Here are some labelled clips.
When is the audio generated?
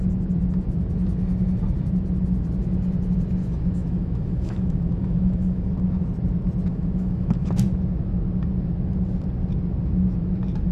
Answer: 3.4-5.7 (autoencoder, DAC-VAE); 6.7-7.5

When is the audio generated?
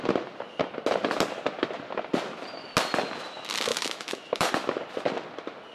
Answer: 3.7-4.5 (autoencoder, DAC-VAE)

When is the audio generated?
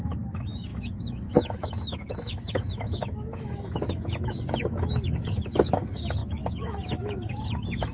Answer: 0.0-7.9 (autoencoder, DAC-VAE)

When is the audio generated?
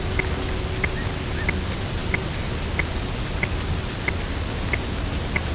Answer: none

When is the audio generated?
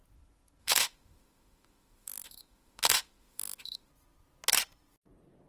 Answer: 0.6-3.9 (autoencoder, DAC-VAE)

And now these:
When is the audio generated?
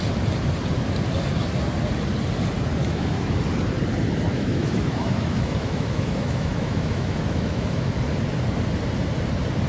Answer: 2.8-3.4 (autoencoder, DAC-VAE); 4.3-7.9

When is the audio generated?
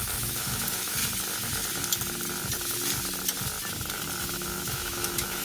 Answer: 0.0-1.0 (autoencoder, DAC-VAE); 4.2-5.4